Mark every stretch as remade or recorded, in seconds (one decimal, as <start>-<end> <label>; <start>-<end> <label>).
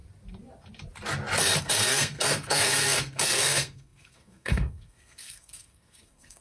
0.0-1.6 recorded; 1.6-6.4 remade